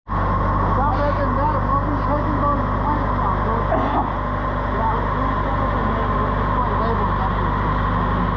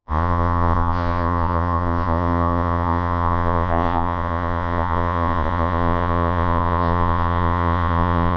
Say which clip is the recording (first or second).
first